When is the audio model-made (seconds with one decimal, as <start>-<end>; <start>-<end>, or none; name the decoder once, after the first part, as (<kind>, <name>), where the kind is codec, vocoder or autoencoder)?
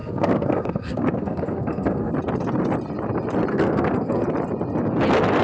0.0-2.1 (codec, SNAC); 3.5-4.2